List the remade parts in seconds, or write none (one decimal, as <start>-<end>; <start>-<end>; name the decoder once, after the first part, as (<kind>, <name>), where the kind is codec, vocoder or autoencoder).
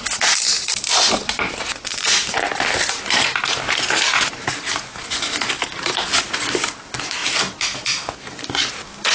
none